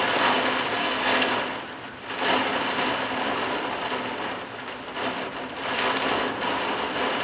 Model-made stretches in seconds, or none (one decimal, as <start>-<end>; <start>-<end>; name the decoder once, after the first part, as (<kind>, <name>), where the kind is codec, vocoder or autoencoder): 0.8-1.3 (codec, SNAC)